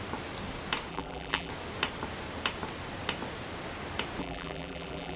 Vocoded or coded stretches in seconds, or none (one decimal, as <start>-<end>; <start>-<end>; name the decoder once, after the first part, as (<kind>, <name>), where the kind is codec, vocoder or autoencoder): 0.9-1.5 (vocoder, BigVGAN v2); 4.2-5.2